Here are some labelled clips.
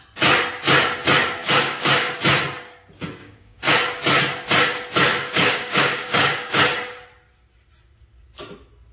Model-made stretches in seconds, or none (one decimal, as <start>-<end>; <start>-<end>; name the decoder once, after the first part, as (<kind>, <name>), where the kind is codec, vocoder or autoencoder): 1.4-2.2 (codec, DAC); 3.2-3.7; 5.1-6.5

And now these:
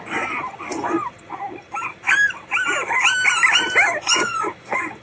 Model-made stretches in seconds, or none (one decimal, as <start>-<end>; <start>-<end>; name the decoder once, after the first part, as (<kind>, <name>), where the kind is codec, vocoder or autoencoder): 0.0-1.0 (vocoder, Vocos); 4.0-5.0

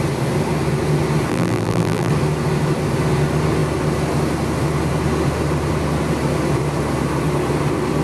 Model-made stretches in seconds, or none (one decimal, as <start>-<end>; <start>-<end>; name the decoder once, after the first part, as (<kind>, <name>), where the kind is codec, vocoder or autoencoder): 1.3-2.1 (vocoder, BigVGAN v2)

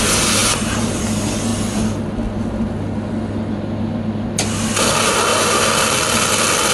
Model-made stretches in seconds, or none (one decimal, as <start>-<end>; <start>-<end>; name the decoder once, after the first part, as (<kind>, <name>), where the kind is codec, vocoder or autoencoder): 0.4-1.0 (vocoder, BigVGAN v2)